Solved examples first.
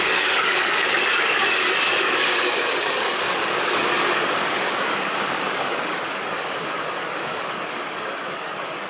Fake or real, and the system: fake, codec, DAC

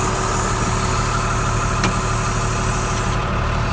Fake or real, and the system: real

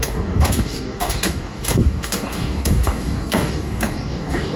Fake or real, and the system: fake, codec, DAC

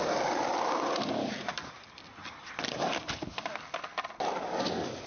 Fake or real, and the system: real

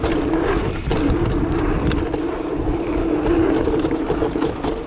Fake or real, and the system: real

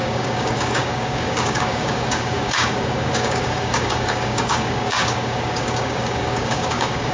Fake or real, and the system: fake, codec, DAC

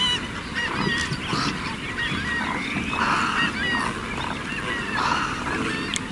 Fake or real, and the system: real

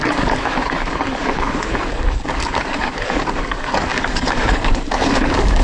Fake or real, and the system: fake, codec, DAC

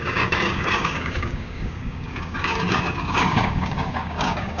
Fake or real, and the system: fake, codec, DAC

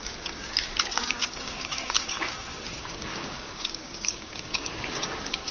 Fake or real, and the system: fake, codec, DAC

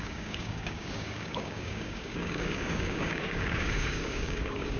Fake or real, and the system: fake, codec, DAC